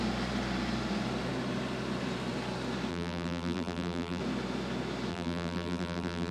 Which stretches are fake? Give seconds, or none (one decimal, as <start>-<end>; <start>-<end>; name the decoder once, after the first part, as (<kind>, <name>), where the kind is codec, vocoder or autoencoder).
2.9-4.2 (vocoder, BigVGAN v2); 5.1-6.3